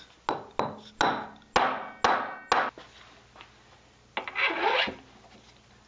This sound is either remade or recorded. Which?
recorded